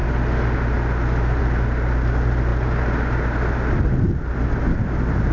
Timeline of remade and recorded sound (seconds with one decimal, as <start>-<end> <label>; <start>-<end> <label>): 0.0-5.3 recorded